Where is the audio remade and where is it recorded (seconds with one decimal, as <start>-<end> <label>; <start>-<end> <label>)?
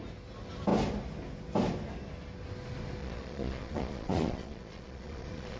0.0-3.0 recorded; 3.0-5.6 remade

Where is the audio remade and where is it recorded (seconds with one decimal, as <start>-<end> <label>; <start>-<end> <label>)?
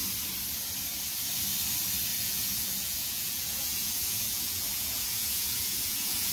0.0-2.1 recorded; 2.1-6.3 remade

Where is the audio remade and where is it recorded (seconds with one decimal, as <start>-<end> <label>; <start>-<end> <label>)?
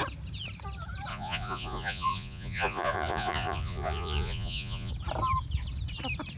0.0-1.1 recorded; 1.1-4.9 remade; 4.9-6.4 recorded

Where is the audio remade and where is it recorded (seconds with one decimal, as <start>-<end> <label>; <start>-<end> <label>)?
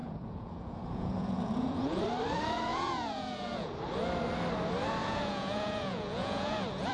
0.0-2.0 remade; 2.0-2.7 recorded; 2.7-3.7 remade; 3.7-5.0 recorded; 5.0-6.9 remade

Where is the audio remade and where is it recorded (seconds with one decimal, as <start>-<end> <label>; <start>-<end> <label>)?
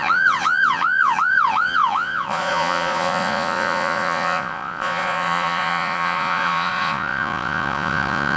0.0-8.4 remade